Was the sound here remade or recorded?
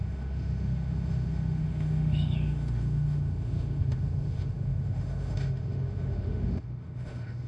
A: remade